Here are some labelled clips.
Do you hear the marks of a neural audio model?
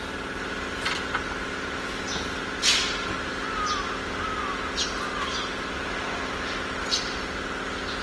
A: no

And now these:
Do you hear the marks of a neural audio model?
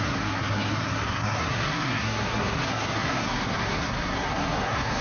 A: yes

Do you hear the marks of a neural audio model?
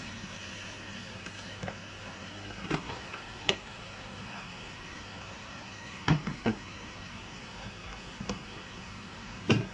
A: yes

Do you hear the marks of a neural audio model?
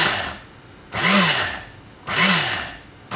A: no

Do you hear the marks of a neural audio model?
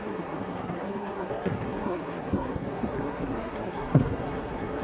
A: yes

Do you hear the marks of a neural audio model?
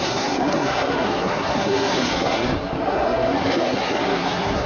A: yes